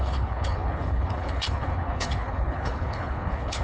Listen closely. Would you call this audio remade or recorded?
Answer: remade